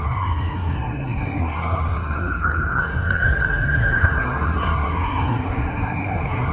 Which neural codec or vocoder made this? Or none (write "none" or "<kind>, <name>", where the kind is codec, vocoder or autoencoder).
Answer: codec, SNAC